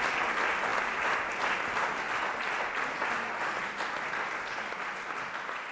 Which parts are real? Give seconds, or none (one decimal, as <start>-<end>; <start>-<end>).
0.0-5.7